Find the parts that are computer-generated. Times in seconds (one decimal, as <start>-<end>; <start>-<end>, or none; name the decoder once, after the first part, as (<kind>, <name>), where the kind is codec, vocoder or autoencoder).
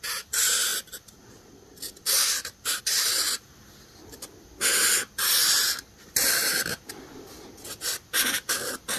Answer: none